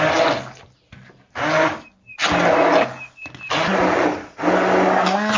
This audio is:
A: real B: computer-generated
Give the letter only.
A